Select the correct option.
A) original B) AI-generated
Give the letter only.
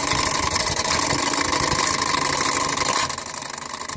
A